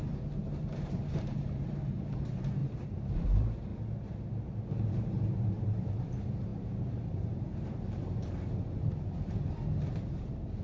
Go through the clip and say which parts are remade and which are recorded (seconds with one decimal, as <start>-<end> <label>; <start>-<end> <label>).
0.0-3.7 remade; 3.7-4.9 recorded; 4.9-10.6 remade

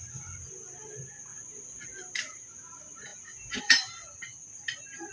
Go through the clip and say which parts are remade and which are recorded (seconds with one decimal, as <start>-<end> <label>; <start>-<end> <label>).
0.0-1.3 remade; 1.3-2.5 recorded; 2.5-4.3 remade; 4.3-5.1 recorded

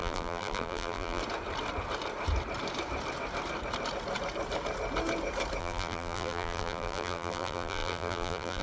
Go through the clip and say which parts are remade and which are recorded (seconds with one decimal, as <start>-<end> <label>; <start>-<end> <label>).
0.0-1.2 remade; 1.2-5.6 recorded; 5.6-8.6 remade

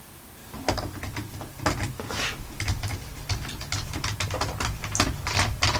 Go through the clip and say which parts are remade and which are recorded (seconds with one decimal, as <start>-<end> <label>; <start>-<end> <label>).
0.0-5.8 recorded

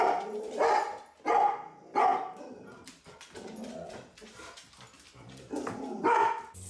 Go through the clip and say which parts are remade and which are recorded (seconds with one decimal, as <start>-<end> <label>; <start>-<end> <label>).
0.0-2.1 recorded; 2.1-2.9 remade; 2.9-6.7 recorded

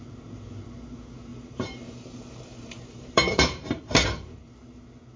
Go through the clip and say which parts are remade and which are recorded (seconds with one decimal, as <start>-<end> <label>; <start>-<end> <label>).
0.0-1.3 recorded; 1.3-4.4 remade; 4.4-5.2 recorded

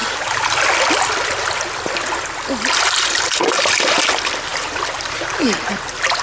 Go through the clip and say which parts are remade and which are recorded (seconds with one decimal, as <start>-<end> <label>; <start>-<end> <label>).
0.0-1.5 remade; 1.5-4.5 recorded; 4.5-5.3 remade; 5.3-6.2 recorded

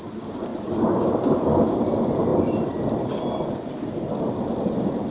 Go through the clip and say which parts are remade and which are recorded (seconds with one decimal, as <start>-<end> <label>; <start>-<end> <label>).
0.0-5.1 recorded